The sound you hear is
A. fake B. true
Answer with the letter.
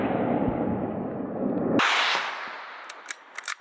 B